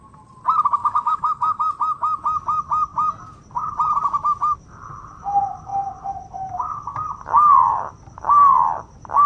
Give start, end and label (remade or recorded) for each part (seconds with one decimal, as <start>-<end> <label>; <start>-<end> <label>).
0.0-0.8 recorded; 0.8-1.6 remade; 1.6-9.3 recorded